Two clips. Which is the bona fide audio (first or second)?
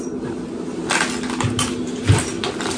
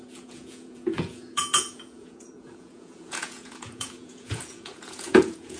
first